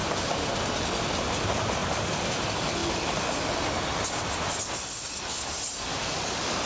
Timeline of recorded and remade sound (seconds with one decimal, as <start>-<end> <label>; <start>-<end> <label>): 0.0-0.5 remade; 0.5-6.7 recorded